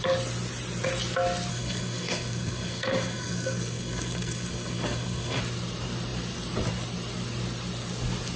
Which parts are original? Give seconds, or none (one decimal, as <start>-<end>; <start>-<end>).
0.0-1.5; 5.4-8.4